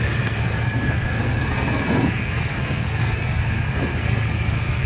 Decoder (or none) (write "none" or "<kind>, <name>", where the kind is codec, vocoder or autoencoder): codec, SNAC